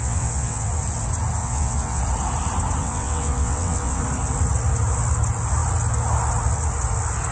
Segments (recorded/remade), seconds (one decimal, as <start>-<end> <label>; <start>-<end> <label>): 0.0-0.7 remade; 0.7-1.4 recorded; 1.4-2.0 remade; 2.0-2.8 recorded; 2.8-4.0 remade; 4.0-7.3 recorded